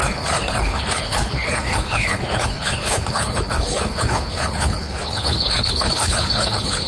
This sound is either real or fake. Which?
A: fake